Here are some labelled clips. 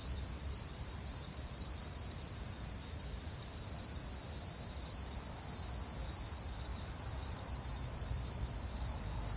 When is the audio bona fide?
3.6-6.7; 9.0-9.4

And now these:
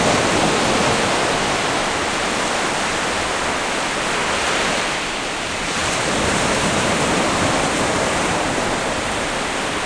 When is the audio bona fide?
0.8-4.5; 5.8-6.7

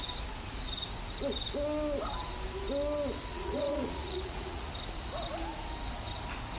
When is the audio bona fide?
0.0-3.3; 4.7-6.6

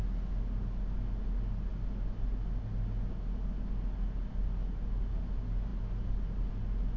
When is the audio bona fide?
0.0-7.0

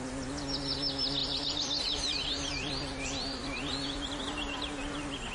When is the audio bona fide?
0.0-1.2; 4.2-5.3

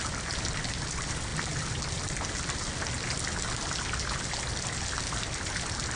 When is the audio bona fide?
0.0-6.0